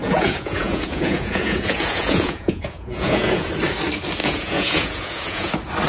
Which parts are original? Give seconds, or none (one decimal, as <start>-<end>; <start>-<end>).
3.5-4.2; 5.5-5.9